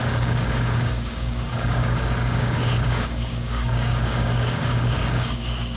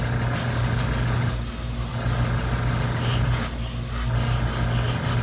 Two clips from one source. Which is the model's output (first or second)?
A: first